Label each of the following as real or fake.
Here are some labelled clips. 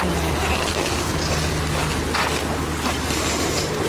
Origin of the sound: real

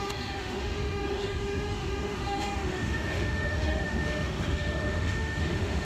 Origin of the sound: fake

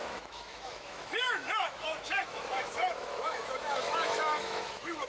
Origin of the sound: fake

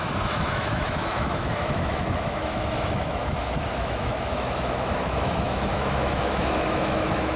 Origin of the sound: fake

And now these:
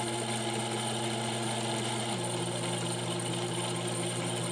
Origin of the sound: real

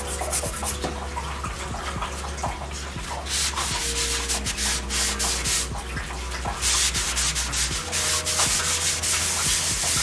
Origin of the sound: real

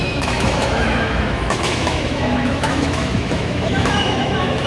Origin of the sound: fake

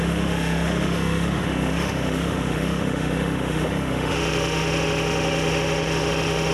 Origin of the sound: fake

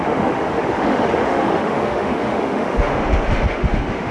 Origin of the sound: fake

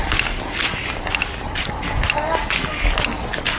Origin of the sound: real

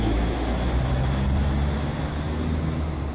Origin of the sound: real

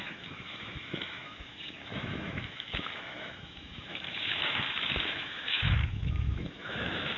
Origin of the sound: fake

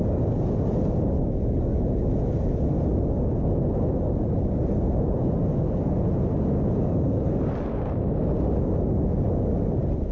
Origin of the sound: real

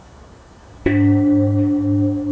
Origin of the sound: fake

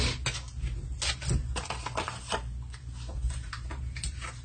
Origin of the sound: real